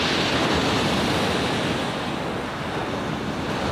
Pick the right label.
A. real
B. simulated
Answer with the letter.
A